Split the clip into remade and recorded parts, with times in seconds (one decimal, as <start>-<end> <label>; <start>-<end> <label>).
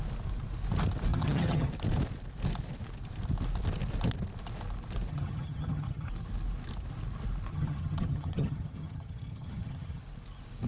0.0-1.1 recorded; 1.1-1.7 remade; 1.7-5.1 recorded; 5.1-6.1 remade; 6.1-7.5 recorded; 7.5-10.0 remade; 10.0-10.7 recorded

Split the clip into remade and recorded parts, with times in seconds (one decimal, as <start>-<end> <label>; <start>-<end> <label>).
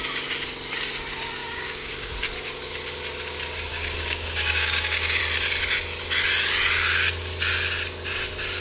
0.0-1.4 recorded; 1.4-2.1 remade; 2.1-3.7 recorded; 3.7-5.2 remade; 5.2-8.6 recorded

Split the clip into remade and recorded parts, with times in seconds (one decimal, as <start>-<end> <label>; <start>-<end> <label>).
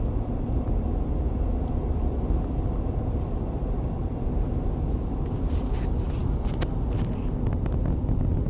0.0-8.5 recorded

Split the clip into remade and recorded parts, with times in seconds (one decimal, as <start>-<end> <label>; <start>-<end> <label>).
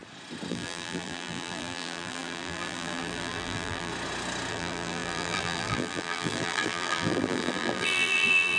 0.0-0.5 recorded; 0.5-3.9 remade; 3.9-4.5 recorded; 4.5-8.6 remade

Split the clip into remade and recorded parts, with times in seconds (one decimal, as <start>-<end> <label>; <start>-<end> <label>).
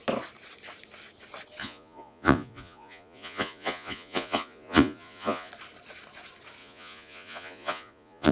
0.0-1.6 recorded; 1.6-5.5 remade; 5.5-6.6 recorded; 6.6-8.3 remade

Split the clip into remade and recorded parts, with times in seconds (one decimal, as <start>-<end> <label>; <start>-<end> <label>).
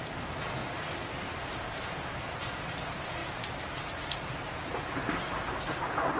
0.0-0.6 remade; 0.6-1.2 recorded; 1.2-6.2 remade